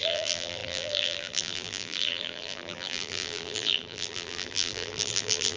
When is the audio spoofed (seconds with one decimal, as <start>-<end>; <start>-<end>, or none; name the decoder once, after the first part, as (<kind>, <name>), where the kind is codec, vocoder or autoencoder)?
0.0-5.6 (vocoder, BigVGAN v2)